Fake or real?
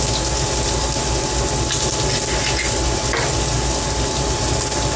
real